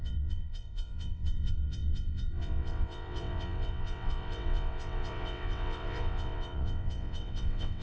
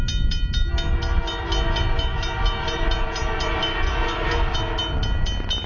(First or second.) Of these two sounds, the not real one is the first